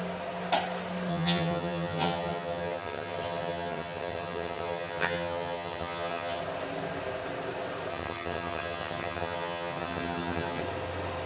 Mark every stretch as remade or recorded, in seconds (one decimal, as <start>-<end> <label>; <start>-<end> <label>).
0.0-1.1 recorded; 1.1-6.4 remade; 6.4-7.9 recorded; 7.9-10.6 remade; 10.6-11.3 recorded